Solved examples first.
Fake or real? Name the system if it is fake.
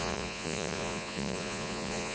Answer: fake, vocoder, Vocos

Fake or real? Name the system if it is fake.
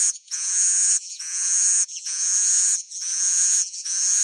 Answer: fake, vocoder, Vocos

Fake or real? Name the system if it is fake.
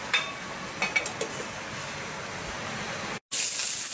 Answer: real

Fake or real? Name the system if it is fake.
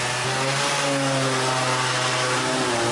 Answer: real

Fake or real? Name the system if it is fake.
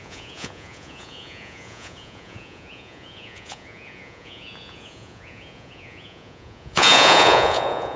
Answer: fake, vocoder, Vocos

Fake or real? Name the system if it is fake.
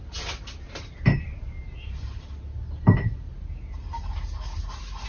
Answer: real